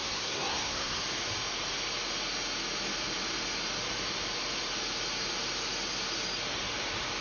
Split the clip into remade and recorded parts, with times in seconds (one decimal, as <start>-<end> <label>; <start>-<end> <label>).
0.0-1.0 remade; 1.0-7.2 recorded